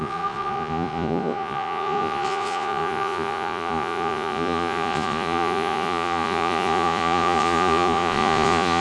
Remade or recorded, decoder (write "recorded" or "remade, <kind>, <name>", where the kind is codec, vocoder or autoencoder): remade, vocoder, Vocos